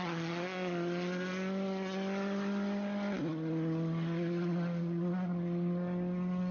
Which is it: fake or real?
real